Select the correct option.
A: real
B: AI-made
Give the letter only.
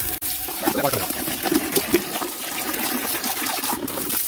B